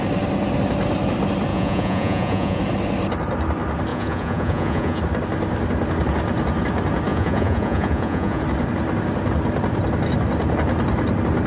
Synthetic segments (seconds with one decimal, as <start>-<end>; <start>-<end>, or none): 1.5-2.6; 3.9-5.0; 7.1-8.4